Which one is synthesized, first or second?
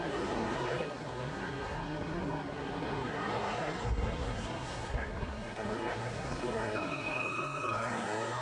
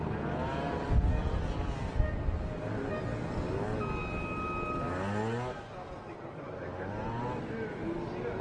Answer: first